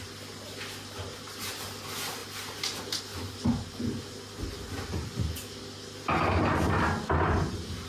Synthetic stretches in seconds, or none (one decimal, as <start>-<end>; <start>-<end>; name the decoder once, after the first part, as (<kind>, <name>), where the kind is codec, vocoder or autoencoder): none